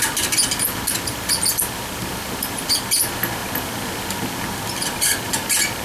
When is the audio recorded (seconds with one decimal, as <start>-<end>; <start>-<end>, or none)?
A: 0.0-5.8